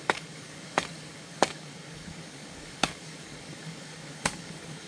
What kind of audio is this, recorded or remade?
remade